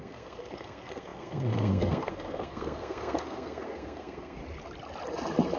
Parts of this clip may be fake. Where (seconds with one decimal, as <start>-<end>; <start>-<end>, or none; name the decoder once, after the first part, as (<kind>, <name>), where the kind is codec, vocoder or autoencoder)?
0.0-4.4 (codec, SNAC)